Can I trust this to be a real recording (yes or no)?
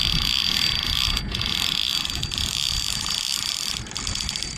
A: yes